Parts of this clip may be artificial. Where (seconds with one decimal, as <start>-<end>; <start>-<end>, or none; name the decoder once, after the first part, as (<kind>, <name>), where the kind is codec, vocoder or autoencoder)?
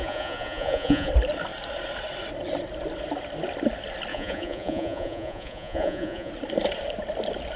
0.0-1.1 (vocoder, Vocos); 4.1-6.3